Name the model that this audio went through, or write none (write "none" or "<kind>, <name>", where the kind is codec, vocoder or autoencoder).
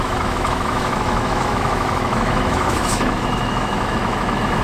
autoencoder, DAC-VAE